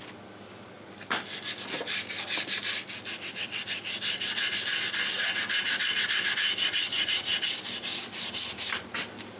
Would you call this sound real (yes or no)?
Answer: yes